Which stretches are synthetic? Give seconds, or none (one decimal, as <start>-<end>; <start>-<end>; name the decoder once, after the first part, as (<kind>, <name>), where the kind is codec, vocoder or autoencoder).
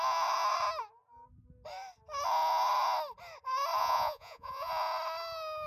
3.8-4.7 (vocoder, Vocos)